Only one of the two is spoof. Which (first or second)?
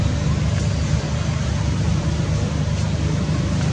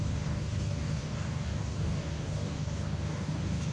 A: second